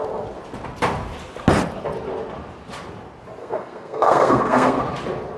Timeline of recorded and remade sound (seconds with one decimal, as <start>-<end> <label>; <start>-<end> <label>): 0.0-3.4 recorded; 3.4-4.8 remade; 4.8-5.4 recorded